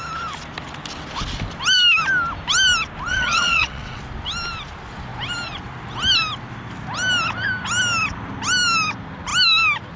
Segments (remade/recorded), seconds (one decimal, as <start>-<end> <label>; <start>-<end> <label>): 0.0-3.1 recorded; 3.1-4.0 remade; 4.0-10.0 recorded